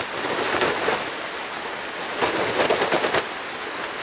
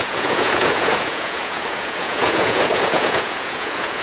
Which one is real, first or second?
first